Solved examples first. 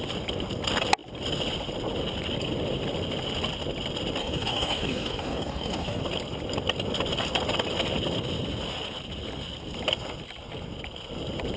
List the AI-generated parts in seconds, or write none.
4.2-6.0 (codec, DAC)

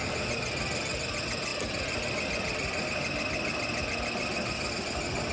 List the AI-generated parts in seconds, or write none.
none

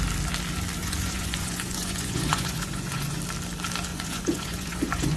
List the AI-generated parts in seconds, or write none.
0.8-3.2 (vocoder, Vocos); 3.9-5.2

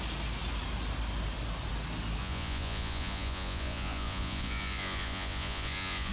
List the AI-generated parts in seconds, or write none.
2.2-6.1 (vocoder, Vocos)

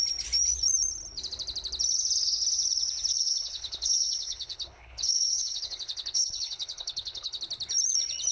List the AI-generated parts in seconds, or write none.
3.1-7.4 (codec, HILCodec)